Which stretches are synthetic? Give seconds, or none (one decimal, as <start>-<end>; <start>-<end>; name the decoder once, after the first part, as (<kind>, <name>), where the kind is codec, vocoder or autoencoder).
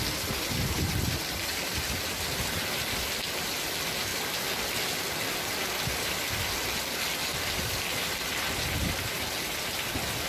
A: none